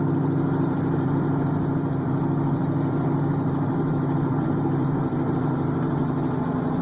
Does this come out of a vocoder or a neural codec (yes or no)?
yes